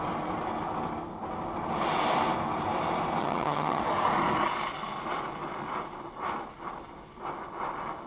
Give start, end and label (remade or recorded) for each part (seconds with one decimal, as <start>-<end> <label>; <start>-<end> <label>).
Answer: 0.0-3.2 recorded; 3.2-3.8 remade; 3.8-8.1 recorded